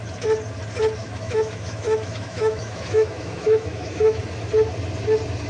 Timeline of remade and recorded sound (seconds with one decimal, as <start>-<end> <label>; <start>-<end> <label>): 0.0-1.0 recorded; 1.0-4.2 remade; 4.2-5.5 recorded